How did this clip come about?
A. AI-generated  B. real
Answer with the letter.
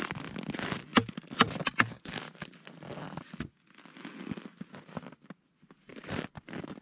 B